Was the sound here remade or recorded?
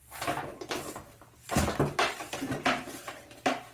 remade